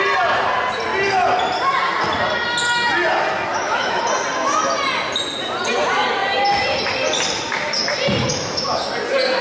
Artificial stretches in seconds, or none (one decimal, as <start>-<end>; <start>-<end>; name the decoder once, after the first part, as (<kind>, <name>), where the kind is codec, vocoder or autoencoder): 3.5-4.0 (autoencoder, DAC-VAE); 8.3-8.9